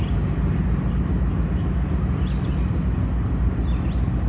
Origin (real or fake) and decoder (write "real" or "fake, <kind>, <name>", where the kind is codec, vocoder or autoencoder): real